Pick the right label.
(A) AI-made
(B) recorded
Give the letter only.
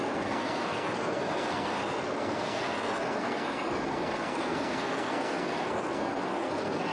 A